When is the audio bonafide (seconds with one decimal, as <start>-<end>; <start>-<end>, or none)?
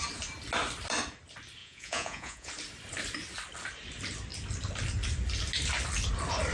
0.0-1.6; 2.5-6.5